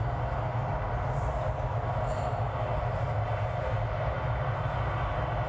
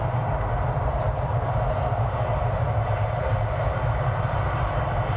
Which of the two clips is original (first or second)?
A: first